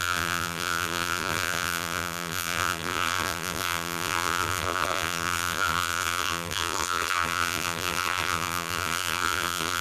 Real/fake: fake